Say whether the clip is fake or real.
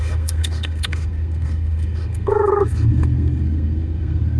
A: fake